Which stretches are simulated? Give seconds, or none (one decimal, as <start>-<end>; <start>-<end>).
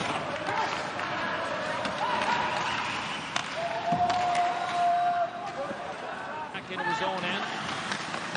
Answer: 3.4-6.0